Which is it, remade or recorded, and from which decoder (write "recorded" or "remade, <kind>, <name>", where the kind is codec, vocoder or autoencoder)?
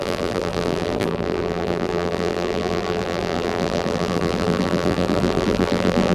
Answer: remade, vocoder, BigVGAN v2